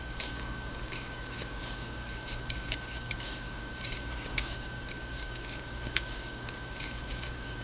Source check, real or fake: fake